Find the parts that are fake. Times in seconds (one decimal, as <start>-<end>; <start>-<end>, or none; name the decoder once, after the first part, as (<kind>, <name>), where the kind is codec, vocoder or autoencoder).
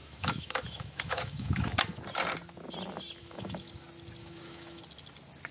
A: 0.0-2.0 (autoencoder, DAC-VAE); 3.2-3.7; 4.2-4.8